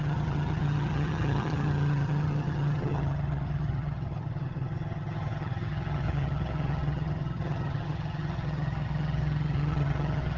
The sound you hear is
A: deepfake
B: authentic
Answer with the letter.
A